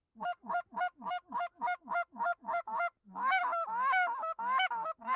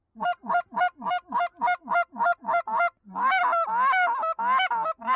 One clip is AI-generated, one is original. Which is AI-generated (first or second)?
first